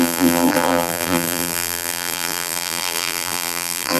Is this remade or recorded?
remade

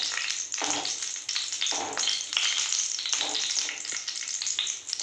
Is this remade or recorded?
recorded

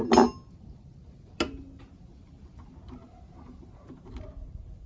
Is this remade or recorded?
recorded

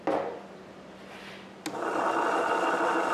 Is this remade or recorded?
recorded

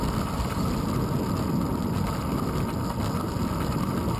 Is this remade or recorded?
recorded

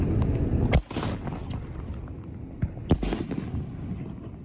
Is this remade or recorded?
recorded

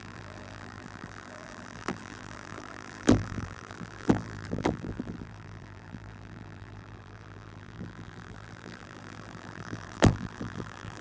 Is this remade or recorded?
remade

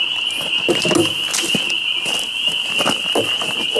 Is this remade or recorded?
recorded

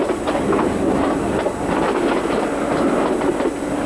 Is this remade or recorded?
recorded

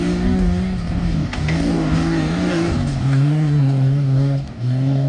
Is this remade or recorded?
remade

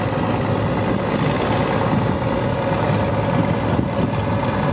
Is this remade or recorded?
recorded